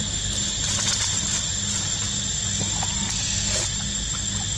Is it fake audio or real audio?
real